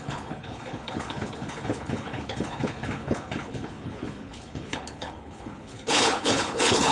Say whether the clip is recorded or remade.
remade